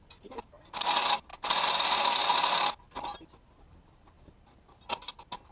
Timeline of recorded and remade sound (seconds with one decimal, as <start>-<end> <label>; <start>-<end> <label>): 0.0-5.5 recorded